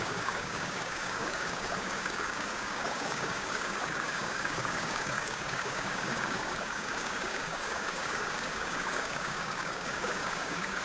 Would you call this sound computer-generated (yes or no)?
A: yes